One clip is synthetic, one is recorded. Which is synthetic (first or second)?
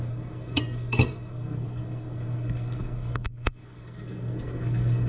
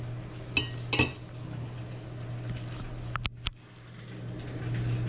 first